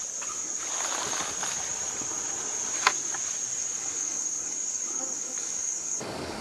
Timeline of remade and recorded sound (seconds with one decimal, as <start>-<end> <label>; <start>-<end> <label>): 0.0-3.6 recorded; 3.6-6.4 remade